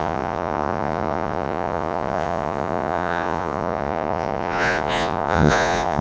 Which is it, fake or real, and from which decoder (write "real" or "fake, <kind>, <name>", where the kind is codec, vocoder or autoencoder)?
fake, vocoder, Vocos